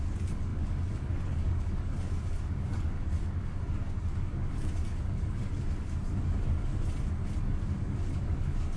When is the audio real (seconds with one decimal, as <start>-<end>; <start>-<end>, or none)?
6.7-7.4